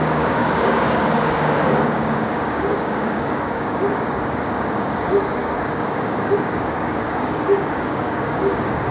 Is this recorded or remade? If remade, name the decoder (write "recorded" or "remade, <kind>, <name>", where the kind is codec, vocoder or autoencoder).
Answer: remade, codec, DAC